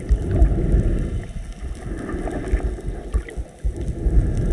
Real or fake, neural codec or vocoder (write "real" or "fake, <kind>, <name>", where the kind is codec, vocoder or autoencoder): real